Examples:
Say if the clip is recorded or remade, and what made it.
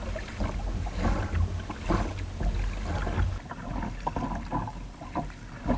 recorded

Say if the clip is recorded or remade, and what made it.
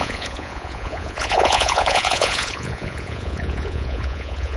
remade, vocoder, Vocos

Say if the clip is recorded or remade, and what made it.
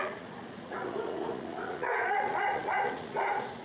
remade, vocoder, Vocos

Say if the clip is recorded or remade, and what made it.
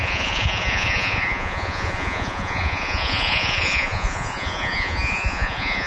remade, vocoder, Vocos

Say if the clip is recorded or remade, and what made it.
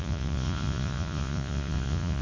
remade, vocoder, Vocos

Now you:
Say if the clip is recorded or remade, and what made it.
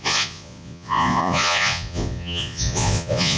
remade, vocoder, Vocos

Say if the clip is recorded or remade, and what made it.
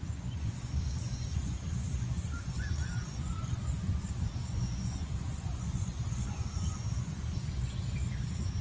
remade, vocoder, Vocos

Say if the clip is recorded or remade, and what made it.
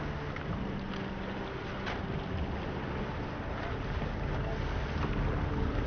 recorded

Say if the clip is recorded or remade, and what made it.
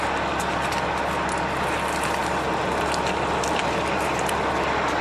recorded